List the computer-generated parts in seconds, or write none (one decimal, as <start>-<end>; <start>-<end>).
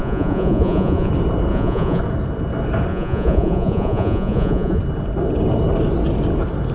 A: 0.0-1.1; 1.5-2.0; 2.9-4.8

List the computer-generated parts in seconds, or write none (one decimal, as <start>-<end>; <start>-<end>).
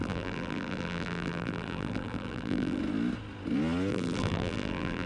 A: 0.0-2.8; 3.9-5.1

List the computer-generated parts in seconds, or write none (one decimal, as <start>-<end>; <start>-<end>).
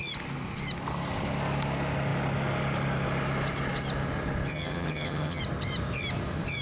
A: 4.5-5.4